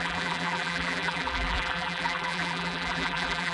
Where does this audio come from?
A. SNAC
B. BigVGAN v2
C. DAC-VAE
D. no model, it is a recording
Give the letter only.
B